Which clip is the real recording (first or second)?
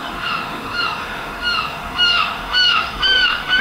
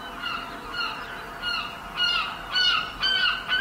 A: second